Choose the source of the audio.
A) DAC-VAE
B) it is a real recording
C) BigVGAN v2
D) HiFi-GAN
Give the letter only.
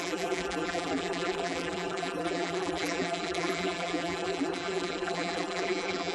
C